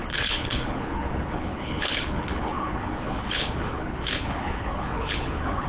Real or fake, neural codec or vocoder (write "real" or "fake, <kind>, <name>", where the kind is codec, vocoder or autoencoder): fake, codec, HILCodec